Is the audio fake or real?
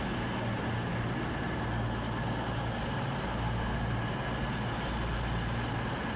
real